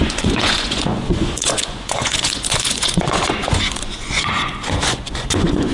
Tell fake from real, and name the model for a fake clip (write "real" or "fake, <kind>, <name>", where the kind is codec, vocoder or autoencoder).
fake, vocoder, Vocos